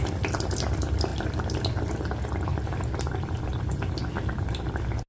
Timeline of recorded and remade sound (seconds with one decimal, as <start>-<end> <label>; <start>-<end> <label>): 0.0-5.1 recorded